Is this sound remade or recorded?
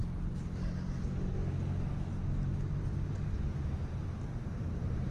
recorded